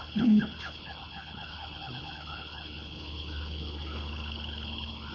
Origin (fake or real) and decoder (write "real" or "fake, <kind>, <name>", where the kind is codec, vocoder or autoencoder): fake, codec, HILCodec